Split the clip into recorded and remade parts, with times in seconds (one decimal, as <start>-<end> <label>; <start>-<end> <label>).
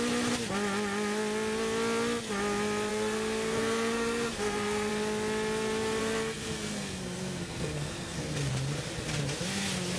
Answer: 0.0-2.9 recorded; 2.9-4.9 remade; 4.9-6.0 recorded; 6.0-8.5 remade; 8.5-10.0 recorded